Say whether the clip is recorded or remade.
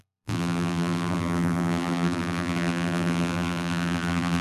remade